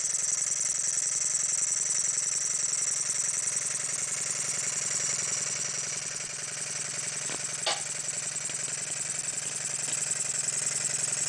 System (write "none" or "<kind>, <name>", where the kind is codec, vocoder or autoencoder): none